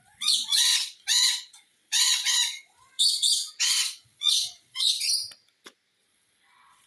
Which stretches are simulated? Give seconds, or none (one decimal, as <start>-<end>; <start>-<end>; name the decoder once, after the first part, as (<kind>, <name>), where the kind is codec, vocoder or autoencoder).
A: 0.0-5.1 (vocoder, Vocos); 6.0-6.9